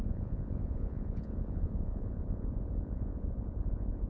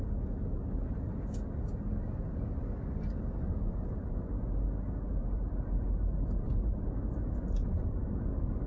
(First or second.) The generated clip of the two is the first